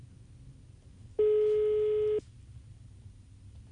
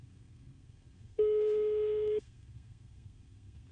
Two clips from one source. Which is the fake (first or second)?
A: second